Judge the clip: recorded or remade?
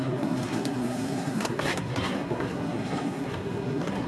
remade